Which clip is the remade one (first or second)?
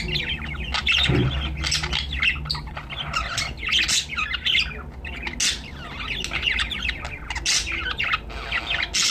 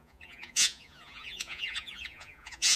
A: second